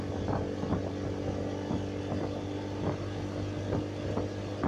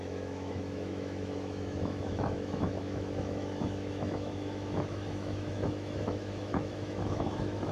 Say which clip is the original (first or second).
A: first